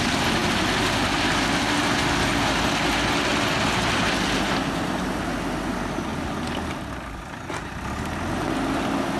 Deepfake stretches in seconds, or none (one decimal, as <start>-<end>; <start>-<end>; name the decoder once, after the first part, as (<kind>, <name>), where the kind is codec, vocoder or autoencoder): none